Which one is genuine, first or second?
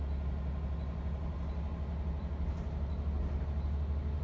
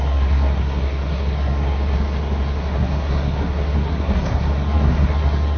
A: first